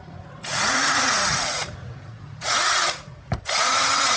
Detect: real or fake fake